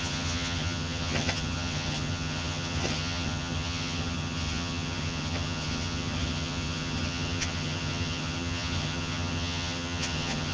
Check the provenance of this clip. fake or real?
fake